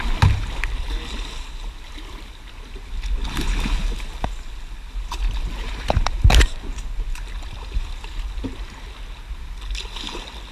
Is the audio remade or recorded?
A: recorded